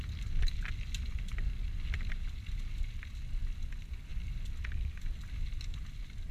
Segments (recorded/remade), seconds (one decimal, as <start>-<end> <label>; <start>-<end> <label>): 0.0-6.3 recorded